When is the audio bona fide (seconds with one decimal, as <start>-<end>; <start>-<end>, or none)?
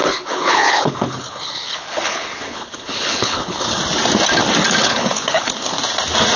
3.8-4.8; 5.8-6.4